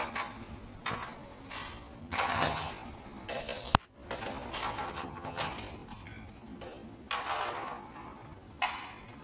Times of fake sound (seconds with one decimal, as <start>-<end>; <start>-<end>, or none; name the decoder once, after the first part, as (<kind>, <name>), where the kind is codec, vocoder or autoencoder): 2.0-2.7 (vocoder, HiFi-GAN); 4.9-5.5